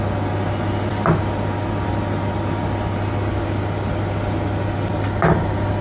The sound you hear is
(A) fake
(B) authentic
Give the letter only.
B